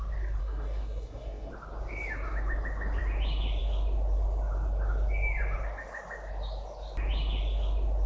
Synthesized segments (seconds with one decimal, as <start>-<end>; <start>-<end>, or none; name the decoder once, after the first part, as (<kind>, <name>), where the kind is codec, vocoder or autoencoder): 0.4-1.5 (codec, SNAC)